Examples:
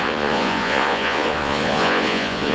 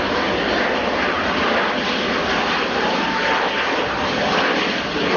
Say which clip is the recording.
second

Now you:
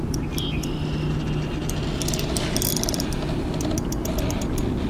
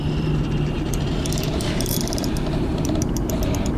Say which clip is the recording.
first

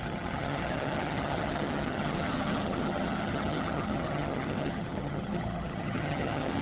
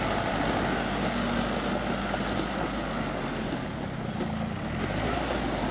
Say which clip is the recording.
second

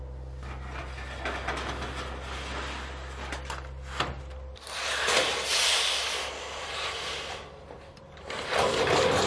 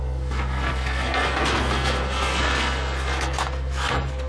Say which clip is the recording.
first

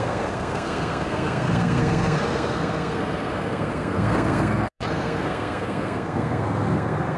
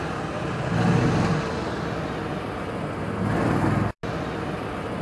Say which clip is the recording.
second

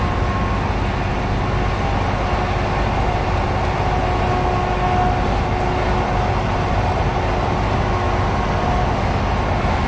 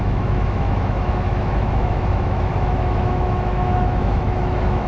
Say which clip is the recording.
first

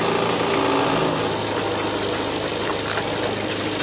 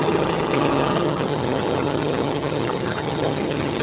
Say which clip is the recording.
first